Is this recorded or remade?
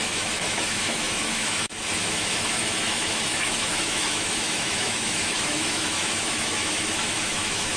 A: remade